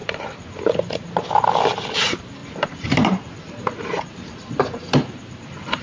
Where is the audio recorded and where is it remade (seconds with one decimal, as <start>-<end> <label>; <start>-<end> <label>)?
0.0-0.6 remade; 0.6-2.4 recorded; 2.4-5.8 remade